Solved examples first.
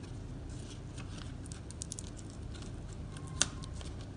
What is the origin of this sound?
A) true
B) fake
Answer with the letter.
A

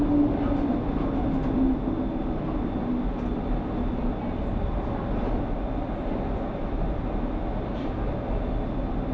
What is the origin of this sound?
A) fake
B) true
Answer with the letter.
B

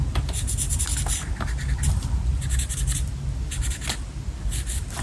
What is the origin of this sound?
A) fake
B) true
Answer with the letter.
B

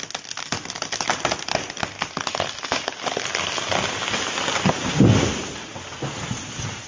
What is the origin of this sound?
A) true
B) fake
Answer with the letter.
A